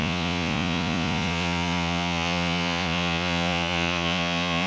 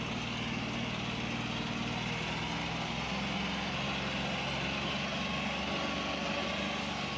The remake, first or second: first